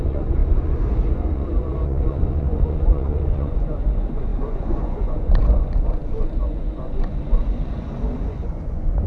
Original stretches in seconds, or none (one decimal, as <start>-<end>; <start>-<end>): none